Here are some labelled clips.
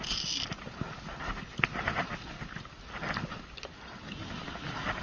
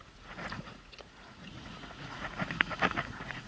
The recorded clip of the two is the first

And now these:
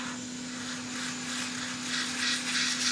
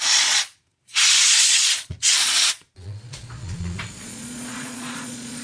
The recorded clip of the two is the first